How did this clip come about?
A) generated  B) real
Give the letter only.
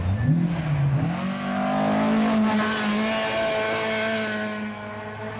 B